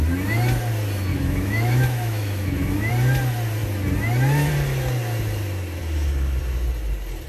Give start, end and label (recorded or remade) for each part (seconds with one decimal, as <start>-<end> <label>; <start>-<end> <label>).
0.0-1.1 recorded; 1.1-2.9 remade; 2.9-7.3 recorded